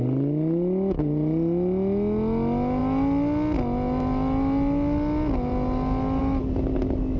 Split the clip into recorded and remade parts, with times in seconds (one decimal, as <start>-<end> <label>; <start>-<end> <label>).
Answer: 0.0-7.2 recorded